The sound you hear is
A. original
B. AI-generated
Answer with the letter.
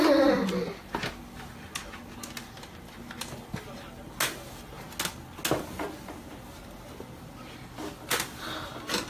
A